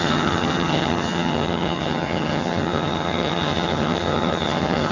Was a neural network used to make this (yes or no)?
yes